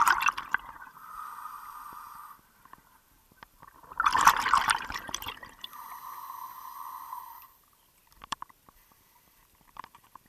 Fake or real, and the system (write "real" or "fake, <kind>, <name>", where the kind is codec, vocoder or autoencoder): fake, vocoder, BigVGAN v2